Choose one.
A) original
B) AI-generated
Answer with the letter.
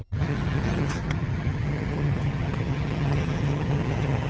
B